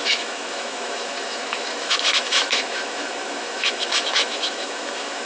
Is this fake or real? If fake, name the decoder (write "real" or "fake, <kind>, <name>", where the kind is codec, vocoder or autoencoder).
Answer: fake, autoencoder, DAC-VAE